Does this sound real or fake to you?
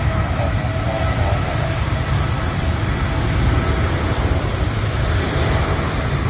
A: real